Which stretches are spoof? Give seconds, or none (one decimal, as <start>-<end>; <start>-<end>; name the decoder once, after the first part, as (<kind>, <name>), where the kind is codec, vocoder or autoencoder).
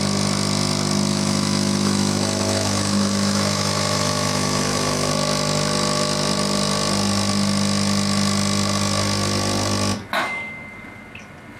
1.1-5.1 (autoencoder, DAC-VAE)